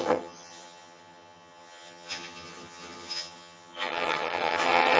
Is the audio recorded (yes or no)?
no